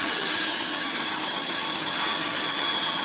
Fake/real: fake